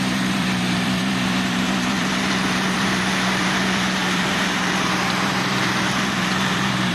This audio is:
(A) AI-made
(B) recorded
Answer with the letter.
A